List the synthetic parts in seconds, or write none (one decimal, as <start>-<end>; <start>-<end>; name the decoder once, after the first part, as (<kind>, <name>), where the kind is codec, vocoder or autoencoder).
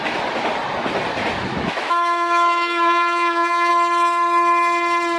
1.5-3.7 (autoencoder, DAC-VAE)